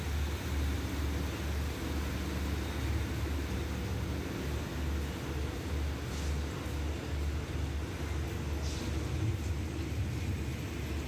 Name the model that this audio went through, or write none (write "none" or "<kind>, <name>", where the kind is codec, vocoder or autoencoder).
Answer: none